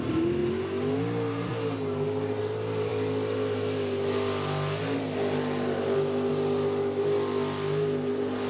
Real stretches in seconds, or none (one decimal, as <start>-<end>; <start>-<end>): 0.0-8.5